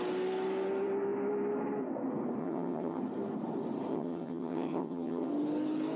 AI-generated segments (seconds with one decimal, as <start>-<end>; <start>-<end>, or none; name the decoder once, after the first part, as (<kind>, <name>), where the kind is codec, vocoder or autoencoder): 2.4-3.0 (vocoder, HiFi-GAN); 3.9-5.3